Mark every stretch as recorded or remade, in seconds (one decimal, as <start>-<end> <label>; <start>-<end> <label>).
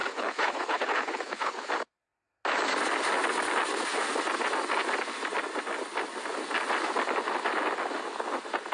0.0-1.7 remade; 1.7-8.7 recorded